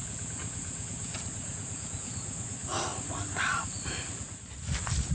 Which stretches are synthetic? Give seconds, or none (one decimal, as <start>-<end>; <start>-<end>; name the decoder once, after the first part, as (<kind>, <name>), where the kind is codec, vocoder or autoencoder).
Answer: 0.0-2.6 (vocoder, Vocos)